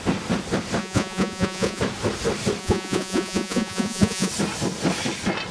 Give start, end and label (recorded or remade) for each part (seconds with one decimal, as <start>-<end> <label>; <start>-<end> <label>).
0.0-0.8 recorded; 0.8-1.8 remade; 1.8-2.6 recorded; 2.6-4.3 remade; 4.3-5.5 recorded